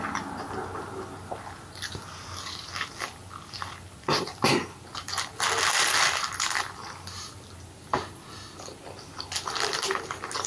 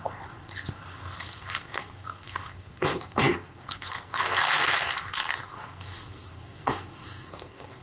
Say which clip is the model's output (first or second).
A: second